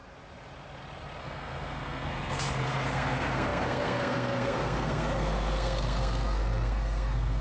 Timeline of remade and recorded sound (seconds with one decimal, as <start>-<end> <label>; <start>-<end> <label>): 0.0-1.2 recorded; 1.2-7.4 remade